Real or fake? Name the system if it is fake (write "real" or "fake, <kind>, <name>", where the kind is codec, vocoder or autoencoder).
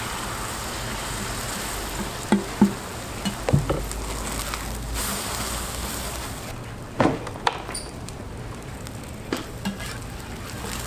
real